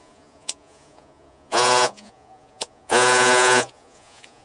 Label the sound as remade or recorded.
remade